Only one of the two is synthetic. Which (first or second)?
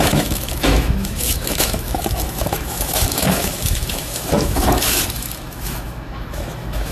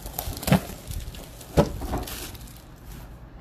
first